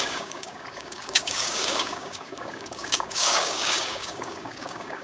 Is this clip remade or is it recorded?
remade